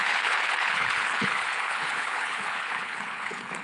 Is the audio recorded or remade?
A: remade